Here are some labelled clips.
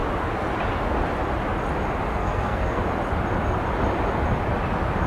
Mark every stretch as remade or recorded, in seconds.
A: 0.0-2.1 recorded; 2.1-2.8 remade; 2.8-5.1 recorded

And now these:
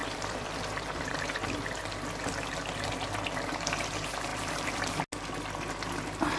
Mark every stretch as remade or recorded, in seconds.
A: 0.0-1.8 remade; 1.8-4.3 recorded; 4.3-5.0 remade; 5.0-6.4 recorded

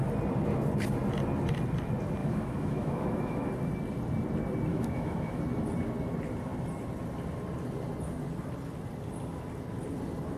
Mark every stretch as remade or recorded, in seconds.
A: 0.0-2.2 recorded; 2.2-3.5 remade; 3.5-4.7 recorded; 4.7-5.4 remade; 5.4-10.4 recorded

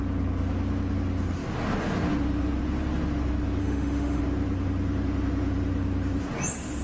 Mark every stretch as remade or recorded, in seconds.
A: 0.0-3.6 recorded; 3.6-4.2 remade; 4.2-6.8 recorded